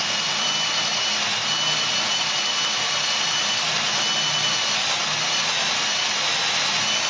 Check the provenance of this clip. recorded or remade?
recorded